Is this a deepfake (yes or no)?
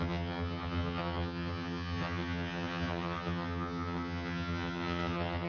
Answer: yes